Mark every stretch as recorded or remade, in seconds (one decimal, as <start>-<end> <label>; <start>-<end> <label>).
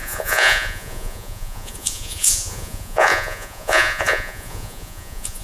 0.0-5.4 remade